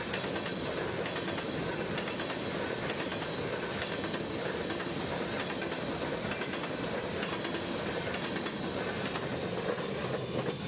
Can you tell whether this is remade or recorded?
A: recorded